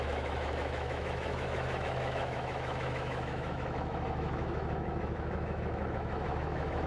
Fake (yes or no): yes